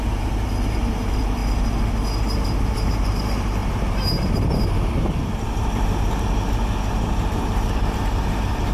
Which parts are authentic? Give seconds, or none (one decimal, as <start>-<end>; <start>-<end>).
1.4-2.7